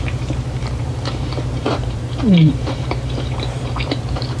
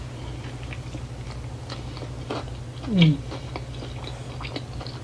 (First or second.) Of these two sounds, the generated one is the first